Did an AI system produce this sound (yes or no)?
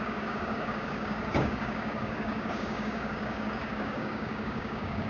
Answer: yes